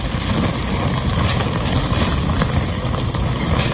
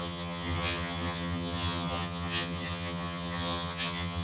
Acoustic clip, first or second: first